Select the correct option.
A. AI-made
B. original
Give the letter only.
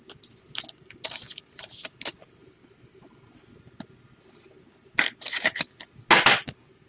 B